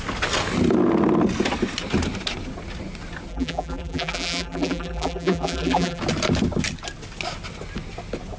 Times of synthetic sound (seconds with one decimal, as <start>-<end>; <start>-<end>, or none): 3.3-6.0